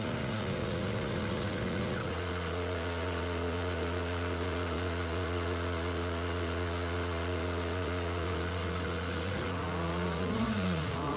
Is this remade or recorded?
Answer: remade